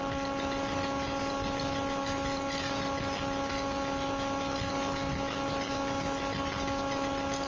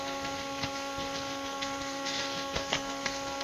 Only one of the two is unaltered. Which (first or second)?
first